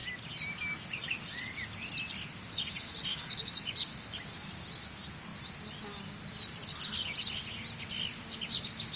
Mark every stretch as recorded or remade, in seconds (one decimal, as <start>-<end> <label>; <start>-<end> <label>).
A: 0.0-9.0 recorded